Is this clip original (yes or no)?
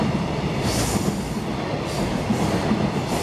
yes